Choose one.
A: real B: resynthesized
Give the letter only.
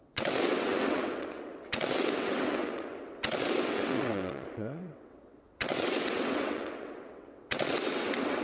B